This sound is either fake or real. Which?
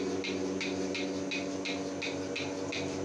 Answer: real